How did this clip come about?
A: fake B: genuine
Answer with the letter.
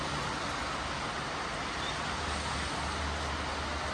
B